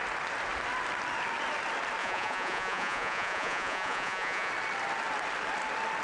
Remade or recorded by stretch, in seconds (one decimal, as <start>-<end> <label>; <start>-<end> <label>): 0.0-2.0 recorded; 2.0-4.5 remade; 4.5-6.0 recorded